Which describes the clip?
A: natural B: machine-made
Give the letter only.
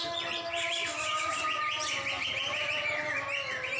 A